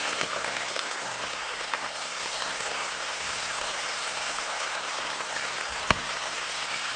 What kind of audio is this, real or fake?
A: fake